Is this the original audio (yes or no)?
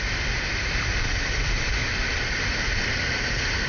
no